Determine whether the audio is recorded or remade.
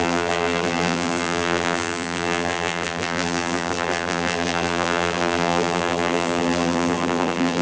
remade